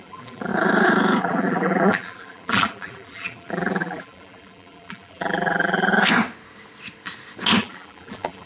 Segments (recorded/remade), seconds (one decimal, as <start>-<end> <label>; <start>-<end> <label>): 0.0-0.5 remade; 0.5-1.2 recorded; 1.2-5.9 remade; 5.9-7.6 recorded; 7.6-8.5 remade

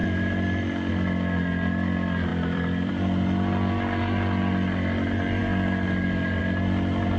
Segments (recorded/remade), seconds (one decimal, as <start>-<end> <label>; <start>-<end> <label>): 0.0-0.9 remade; 0.9-2.3 recorded; 2.3-2.9 remade; 2.9-7.2 recorded

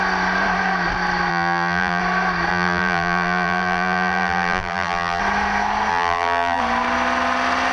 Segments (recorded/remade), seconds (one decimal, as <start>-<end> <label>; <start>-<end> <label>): 0.0-1.3 recorded; 1.3-2.0 remade; 2.0-2.5 recorded; 2.5-5.2 remade; 5.2-5.9 recorded; 5.9-6.6 remade; 6.6-7.7 recorded

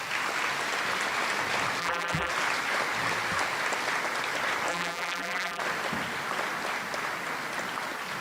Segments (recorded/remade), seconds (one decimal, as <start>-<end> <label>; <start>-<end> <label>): 0.0-1.8 recorded; 1.8-2.3 remade; 2.3-4.7 recorded; 4.7-5.6 remade; 5.6-8.2 recorded

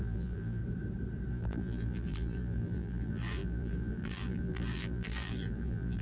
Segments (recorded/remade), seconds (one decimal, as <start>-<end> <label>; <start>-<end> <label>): 0.0-0.6 remade; 0.6-1.3 recorded; 1.3-6.0 remade